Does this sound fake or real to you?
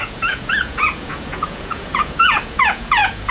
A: fake